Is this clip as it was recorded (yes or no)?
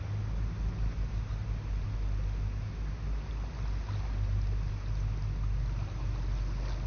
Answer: yes